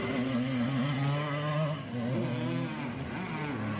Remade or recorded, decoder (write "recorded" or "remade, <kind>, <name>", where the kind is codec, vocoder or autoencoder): recorded